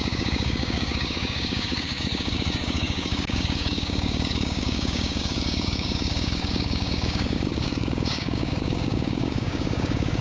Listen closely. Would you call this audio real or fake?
fake